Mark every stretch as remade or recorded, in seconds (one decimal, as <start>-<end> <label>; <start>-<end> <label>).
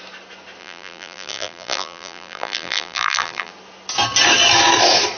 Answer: 0.0-0.6 recorded; 0.6-3.5 remade; 3.5-5.2 recorded